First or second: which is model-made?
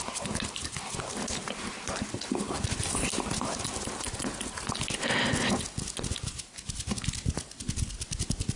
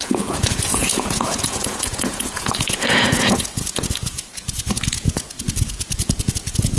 second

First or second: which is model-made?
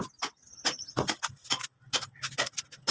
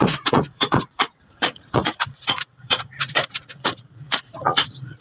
second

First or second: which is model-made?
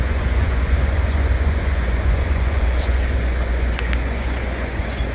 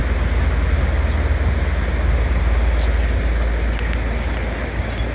first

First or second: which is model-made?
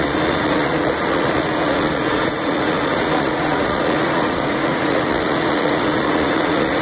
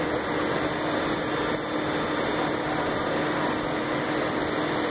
first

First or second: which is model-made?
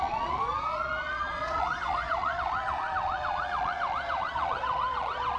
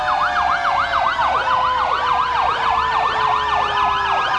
first